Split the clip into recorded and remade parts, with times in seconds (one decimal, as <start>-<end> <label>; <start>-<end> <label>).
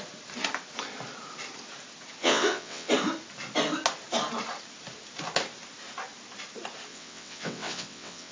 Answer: 0.0-2.2 recorded; 2.2-2.9 remade; 2.9-6.9 recorded; 6.9-8.3 remade